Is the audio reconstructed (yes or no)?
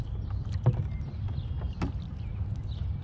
no